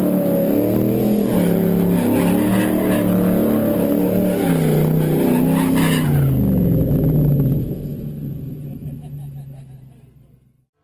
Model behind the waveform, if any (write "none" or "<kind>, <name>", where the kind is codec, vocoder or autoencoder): none